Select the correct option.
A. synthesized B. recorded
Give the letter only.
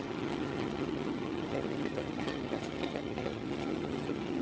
A